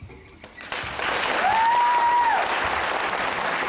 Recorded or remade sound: recorded